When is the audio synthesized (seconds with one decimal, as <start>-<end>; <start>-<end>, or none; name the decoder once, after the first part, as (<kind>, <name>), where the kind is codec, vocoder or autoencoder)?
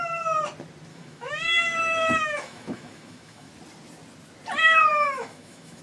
0.9-3.5 (autoencoder, DAC-VAE); 4.9-5.8